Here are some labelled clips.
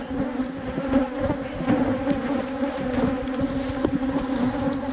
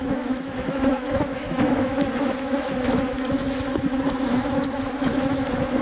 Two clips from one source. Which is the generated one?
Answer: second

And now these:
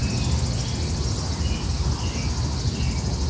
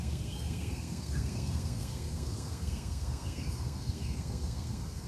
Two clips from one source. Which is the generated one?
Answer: second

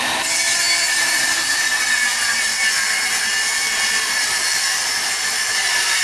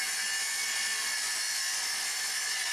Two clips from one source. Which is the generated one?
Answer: first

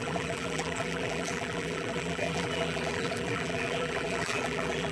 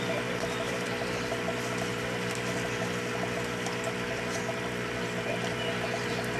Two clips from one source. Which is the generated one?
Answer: first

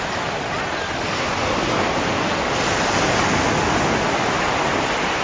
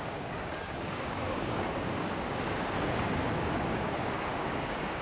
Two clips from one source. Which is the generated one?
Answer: second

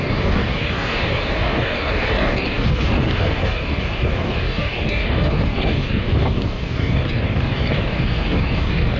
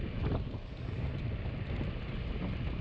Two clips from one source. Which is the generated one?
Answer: first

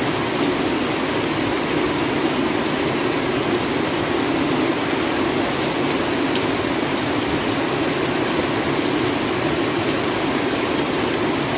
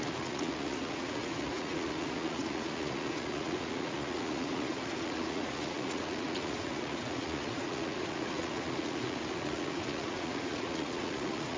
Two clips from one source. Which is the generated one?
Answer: second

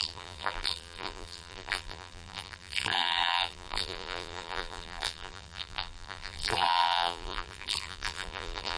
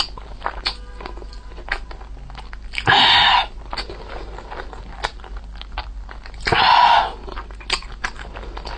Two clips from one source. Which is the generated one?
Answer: first